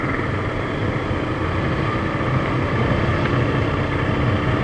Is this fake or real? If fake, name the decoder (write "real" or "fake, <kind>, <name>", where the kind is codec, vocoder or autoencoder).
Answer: real